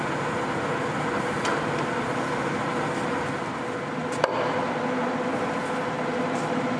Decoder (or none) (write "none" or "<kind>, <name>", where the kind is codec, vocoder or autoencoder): none